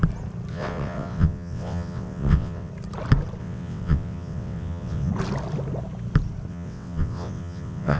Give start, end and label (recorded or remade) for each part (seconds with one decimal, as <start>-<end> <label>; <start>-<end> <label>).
0.0-0.5 recorded; 0.5-2.7 remade; 2.7-3.4 recorded; 3.4-5.1 remade; 5.1-6.5 recorded; 6.5-8.0 remade